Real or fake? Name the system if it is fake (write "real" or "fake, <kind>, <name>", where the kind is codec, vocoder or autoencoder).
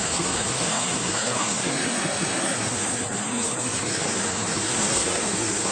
fake, codec, SNAC